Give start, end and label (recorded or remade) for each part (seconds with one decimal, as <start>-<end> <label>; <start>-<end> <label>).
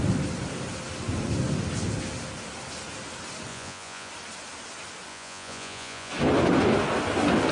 0.0-3.5 recorded; 3.5-4.1 remade; 4.1-5.1 recorded; 5.1-6.1 remade; 6.1-7.5 recorded